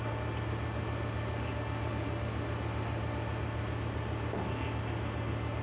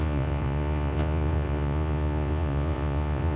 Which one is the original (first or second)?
first